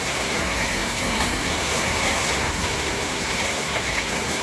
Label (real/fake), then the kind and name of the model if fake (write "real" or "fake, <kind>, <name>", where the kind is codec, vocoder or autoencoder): fake, codec, SNAC